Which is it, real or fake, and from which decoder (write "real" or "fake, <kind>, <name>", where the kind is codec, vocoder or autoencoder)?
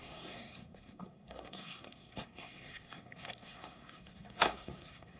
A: fake, codec, SNAC